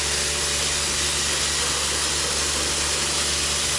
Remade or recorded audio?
recorded